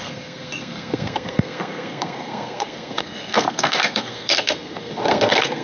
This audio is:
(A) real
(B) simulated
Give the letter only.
B